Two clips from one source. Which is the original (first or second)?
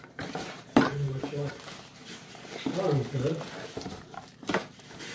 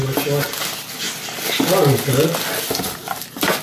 second